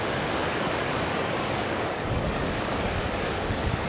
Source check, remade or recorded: remade